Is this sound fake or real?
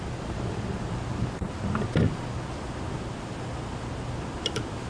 real